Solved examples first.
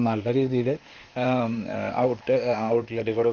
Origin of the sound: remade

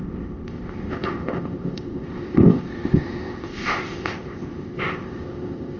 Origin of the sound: remade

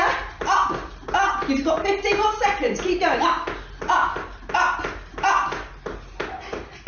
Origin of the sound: recorded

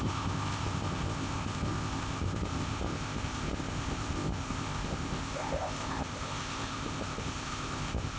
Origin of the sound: remade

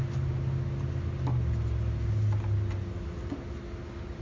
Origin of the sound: recorded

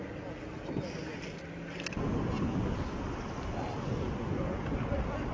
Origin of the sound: recorded